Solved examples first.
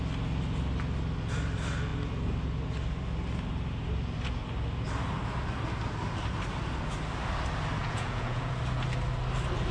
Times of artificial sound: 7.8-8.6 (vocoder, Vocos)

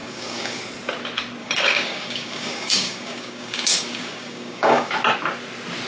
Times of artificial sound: 0.0-0.6 (codec, DAC); 1.4-4.9

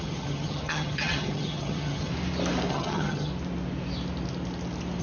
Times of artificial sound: 0.0-2.1 (vocoder, HiFi-GAN); 2.7-3.3

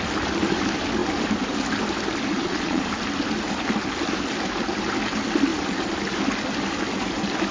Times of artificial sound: 2.3-2.9 (vocoder, Vocos)

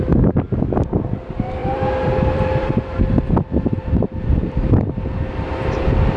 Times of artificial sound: 1.6-5.3 (vocoder, BigVGAN v2)